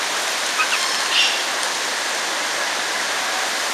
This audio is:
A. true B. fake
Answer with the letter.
A